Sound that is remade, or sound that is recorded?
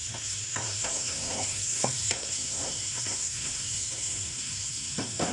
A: remade